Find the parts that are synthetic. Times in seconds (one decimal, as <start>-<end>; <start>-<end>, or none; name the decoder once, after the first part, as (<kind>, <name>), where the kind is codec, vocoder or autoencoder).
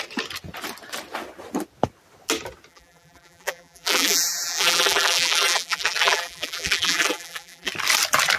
2.7-7.7 (vocoder, BigVGAN v2)